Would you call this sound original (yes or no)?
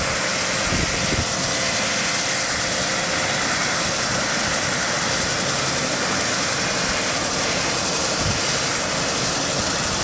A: yes